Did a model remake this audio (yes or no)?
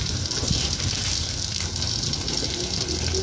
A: no